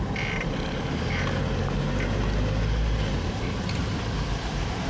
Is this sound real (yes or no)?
yes